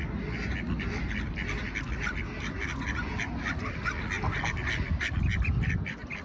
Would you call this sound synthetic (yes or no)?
no